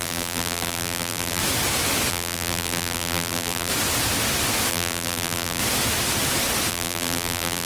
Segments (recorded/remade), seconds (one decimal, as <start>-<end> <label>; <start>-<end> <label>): 0.0-1.4 remade; 1.4-2.1 recorded; 2.1-3.7 remade; 3.7-4.7 recorded; 4.7-5.6 remade; 5.6-6.7 recorded; 6.7-7.7 remade